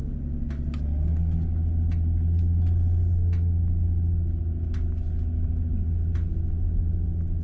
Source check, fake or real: real